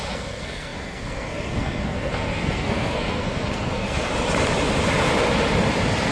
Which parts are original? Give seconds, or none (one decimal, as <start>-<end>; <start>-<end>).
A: 4.1-6.1